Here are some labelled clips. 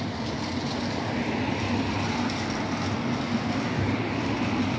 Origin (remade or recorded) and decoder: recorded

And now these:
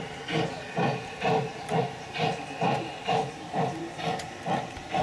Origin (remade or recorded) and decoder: remade, vocoder, BigVGAN v2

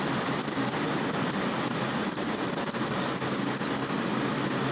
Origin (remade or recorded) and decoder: recorded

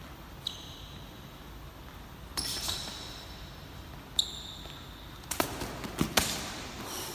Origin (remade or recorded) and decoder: recorded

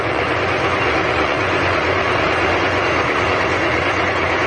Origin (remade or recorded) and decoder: remade, vocoder, Vocos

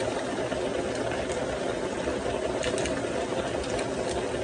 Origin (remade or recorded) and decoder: recorded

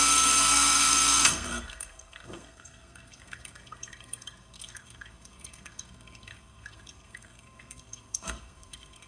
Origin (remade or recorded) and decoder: remade, codec, SNAC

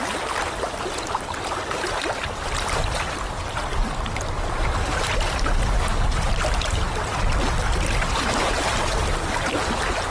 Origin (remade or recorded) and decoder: recorded